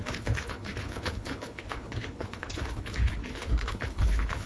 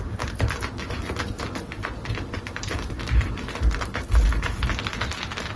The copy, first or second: first